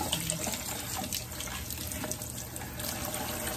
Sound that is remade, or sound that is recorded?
recorded